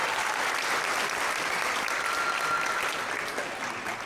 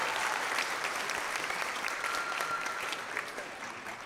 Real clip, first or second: first